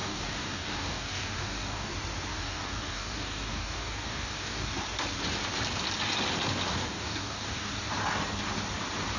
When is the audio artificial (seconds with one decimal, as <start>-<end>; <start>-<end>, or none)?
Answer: 0.0-1.9; 2.3-4.7; 6.7-7.7